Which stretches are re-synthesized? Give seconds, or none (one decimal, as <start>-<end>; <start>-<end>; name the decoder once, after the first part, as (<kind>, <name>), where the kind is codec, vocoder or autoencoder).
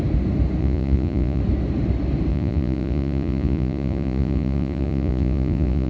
0.6-1.4 (vocoder, Vocos); 2.3-5.9